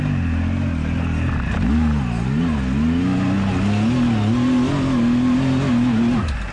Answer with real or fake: real